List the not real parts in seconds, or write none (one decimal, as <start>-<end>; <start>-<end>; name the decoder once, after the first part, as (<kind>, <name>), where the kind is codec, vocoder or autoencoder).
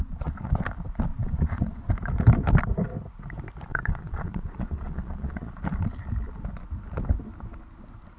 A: 0.0-0.5 (vocoder, Vocos); 1.1-1.9; 3.7-5.6